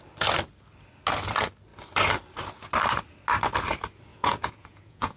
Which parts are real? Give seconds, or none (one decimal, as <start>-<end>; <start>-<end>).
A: 0.0-4.1